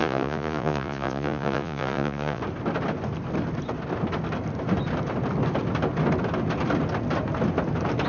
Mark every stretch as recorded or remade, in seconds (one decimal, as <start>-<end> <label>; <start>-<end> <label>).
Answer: 0.0-2.4 remade; 2.4-8.1 recorded